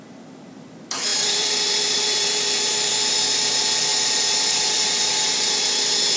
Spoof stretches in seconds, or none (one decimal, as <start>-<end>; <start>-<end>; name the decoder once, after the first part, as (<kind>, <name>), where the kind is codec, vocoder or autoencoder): 1.1-2.9 (vocoder, BigVGAN v2); 3.9-5.6